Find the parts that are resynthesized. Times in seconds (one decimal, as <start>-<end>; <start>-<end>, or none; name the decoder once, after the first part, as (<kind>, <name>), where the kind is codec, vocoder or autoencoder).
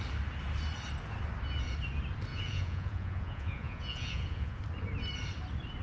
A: 2.3-4.6 (vocoder, Vocos)